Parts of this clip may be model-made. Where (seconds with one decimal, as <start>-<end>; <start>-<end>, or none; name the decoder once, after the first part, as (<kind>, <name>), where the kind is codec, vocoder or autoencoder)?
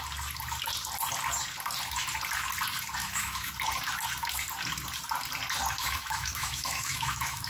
3.0-3.5 (autoencoder, DAC-VAE); 5.8-7.5